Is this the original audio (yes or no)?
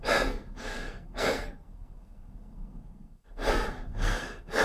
no